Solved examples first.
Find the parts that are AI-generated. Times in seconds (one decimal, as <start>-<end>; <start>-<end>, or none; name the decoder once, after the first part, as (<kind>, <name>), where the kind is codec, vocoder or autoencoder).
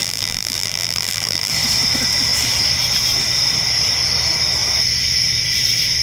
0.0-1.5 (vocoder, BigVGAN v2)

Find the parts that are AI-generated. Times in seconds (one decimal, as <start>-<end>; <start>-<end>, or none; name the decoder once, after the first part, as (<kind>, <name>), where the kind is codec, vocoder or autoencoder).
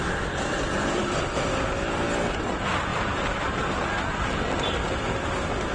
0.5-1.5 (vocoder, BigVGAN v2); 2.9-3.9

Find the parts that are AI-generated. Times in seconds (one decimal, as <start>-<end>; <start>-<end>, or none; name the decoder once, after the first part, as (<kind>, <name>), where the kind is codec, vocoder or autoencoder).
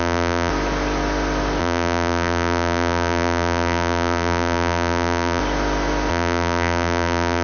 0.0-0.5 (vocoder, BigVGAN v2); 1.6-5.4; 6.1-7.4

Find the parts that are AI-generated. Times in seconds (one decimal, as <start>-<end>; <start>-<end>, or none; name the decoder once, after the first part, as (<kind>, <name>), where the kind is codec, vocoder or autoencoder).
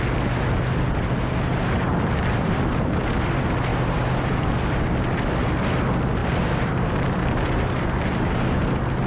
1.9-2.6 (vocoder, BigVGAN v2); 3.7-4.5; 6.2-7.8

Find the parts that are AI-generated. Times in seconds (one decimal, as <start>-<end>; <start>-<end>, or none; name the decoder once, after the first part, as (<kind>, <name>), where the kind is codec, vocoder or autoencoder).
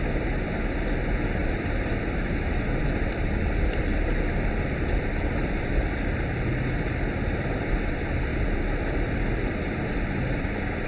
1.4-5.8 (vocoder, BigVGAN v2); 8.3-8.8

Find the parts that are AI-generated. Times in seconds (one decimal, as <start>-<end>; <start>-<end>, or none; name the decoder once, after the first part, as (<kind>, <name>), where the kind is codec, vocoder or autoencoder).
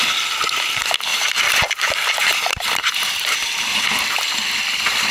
1.1-4.0 (vocoder, BigVGAN v2)